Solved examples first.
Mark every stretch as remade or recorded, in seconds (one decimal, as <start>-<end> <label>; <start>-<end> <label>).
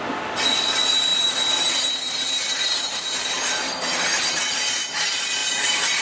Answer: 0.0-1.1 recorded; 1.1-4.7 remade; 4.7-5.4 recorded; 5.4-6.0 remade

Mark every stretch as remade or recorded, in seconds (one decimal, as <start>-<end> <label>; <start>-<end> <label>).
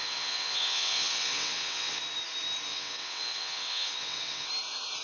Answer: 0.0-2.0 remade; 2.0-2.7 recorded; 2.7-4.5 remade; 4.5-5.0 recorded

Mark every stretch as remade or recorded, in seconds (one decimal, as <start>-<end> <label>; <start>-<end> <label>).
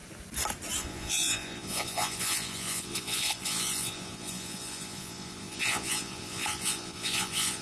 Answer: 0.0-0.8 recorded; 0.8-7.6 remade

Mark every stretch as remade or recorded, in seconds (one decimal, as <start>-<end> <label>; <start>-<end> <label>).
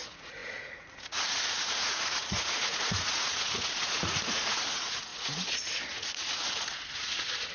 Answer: 0.0-7.5 remade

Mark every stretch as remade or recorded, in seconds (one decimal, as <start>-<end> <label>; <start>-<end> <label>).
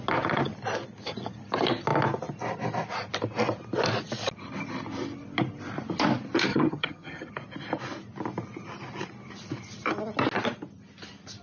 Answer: 0.0-6.5 recorded; 6.5-7.3 remade; 7.3-11.4 recorded